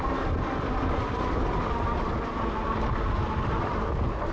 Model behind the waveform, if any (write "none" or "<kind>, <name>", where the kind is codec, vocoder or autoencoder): none